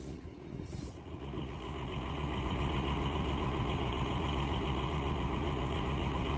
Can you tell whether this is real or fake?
fake